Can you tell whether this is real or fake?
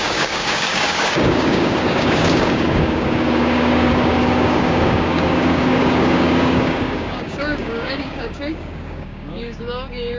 fake